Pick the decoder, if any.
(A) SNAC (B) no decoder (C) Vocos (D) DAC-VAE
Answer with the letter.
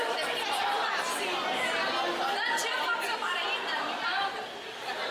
B